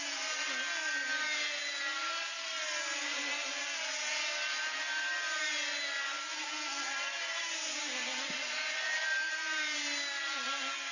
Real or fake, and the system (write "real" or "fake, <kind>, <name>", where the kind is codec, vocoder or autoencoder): real